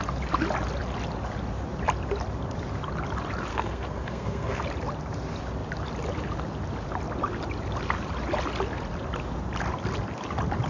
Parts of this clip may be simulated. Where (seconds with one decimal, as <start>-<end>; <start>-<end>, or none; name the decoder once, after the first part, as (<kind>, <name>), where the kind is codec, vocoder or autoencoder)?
3.5-4.6 (codec, SNAC)